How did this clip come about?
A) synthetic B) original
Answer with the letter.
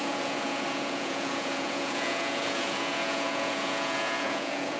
A